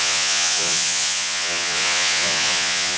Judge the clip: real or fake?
fake